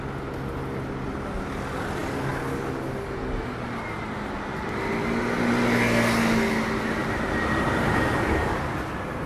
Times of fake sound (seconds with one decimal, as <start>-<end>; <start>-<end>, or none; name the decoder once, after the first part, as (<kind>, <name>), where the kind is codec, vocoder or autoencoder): none